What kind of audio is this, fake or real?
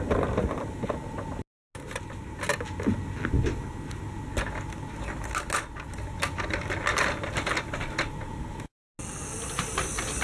real